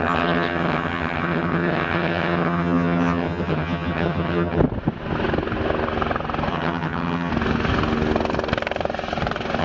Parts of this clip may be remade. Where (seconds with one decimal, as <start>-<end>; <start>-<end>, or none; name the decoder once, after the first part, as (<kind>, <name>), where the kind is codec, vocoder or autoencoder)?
0.0-4.6 (vocoder, HiFi-GAN); 6.5-7.3